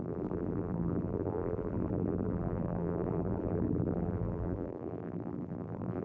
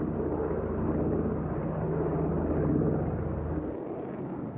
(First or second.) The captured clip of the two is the second